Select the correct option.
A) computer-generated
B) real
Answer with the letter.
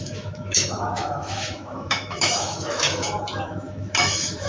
A